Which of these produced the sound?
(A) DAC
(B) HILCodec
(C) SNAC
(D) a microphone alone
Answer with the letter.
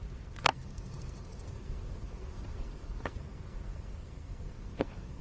C